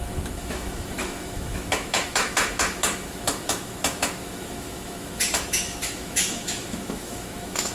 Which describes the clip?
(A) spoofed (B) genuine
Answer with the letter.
A